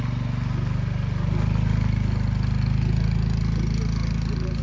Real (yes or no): yes